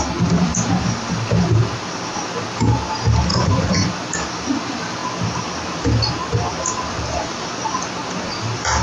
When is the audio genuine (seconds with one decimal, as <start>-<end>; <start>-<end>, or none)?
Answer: 0.0-3.3; 4.0-8.8